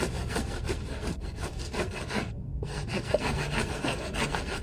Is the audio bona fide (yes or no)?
no